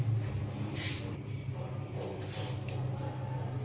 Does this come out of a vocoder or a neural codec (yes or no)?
no